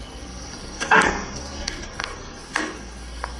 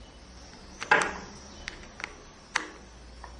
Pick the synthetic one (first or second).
first